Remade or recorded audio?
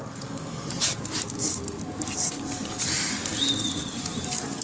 recorded